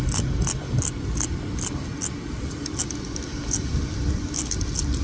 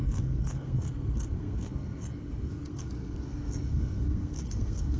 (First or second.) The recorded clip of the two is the first